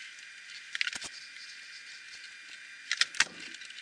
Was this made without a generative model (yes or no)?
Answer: yes